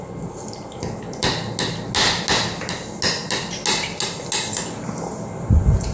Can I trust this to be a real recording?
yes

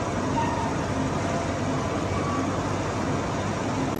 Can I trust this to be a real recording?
yes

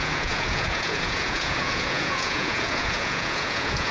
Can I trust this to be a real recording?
no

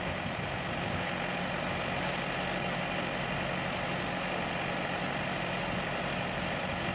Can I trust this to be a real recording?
yes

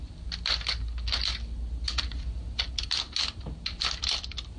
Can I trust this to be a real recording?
yes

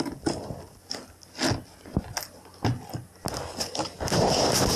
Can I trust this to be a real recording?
yes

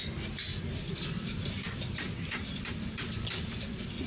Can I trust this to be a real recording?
yes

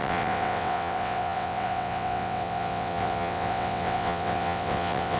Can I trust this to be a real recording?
no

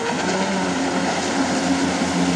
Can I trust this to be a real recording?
yes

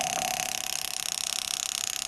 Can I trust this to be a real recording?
yes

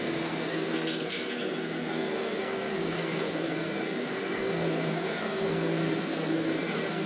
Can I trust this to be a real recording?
no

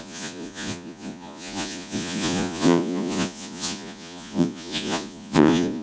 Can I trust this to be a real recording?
no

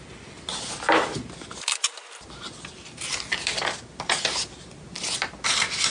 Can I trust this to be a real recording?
yes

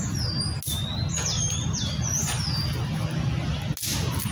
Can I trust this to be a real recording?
yes